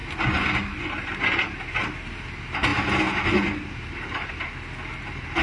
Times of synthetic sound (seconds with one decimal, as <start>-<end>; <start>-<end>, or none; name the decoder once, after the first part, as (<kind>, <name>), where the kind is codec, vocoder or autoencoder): none

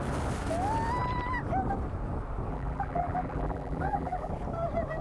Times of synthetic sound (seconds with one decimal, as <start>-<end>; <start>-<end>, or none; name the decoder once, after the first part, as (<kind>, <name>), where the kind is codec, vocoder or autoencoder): 2.5-4.3 (vocoder, BigVGAN v2)